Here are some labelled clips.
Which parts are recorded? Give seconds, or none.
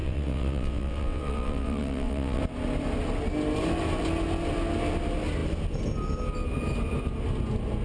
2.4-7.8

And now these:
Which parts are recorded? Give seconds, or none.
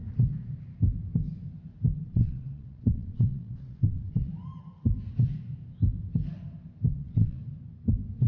0.0-2.1; 4.3-6.9; 7.4-8.3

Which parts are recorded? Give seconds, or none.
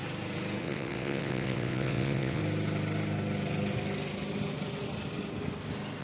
0.0-0.6; 2.4-6.0